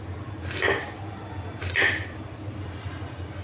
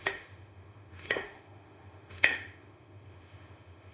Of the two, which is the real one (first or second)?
first